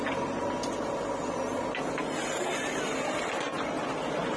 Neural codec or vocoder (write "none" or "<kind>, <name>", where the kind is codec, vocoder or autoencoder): none